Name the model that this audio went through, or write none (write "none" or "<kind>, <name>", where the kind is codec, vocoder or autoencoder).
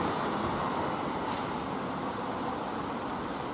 none